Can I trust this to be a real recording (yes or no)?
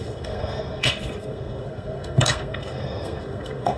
no